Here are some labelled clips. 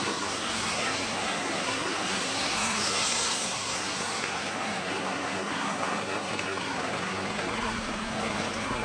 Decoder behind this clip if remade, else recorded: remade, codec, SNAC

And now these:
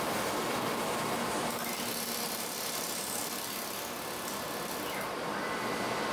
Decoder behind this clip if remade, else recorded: recorded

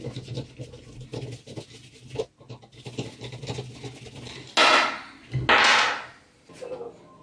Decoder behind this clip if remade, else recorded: recorded